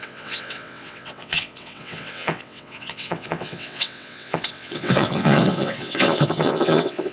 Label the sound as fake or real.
fake